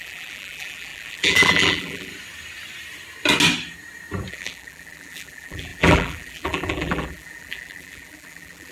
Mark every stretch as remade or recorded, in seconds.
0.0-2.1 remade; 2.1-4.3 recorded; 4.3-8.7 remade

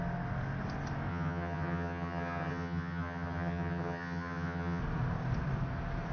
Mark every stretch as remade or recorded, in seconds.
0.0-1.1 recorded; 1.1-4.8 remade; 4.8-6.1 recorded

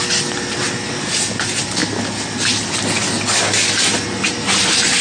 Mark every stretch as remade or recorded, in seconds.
0.0-5.0 recorded